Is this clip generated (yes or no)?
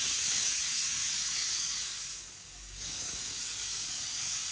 yes